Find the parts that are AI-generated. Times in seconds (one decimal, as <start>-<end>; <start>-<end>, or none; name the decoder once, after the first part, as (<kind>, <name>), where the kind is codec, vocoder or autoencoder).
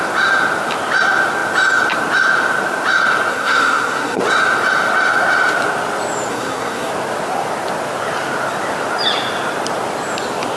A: 3.3-4.2 (codec, SNAC); 6.3-6.9